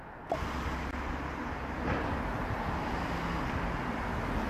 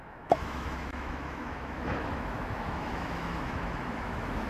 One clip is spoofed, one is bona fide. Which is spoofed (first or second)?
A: second